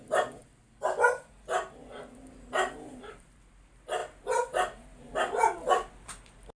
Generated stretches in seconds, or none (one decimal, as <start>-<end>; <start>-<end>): none